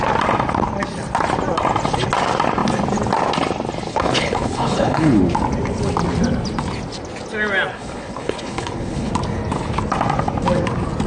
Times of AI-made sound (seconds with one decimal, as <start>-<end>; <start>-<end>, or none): 3.9-5.2; 7.7-9.1